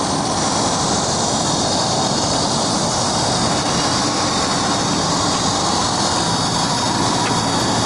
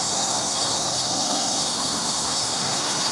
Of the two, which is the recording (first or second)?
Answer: first